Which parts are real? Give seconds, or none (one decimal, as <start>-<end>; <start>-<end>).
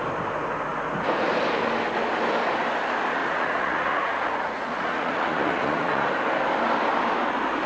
0.0-3.2; 6.1-7.7